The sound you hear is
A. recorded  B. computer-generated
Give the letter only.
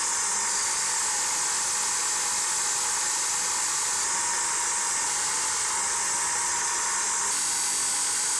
A